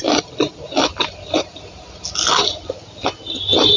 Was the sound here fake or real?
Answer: real